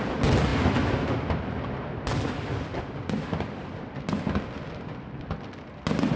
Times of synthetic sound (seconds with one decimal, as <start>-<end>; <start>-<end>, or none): none